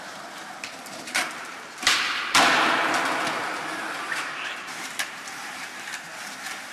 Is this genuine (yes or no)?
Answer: no